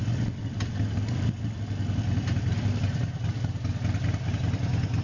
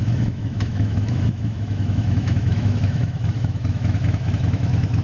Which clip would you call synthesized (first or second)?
second